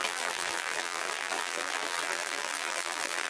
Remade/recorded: remade